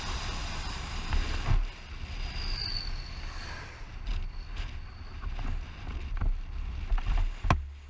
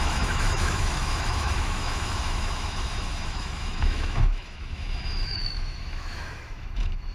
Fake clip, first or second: second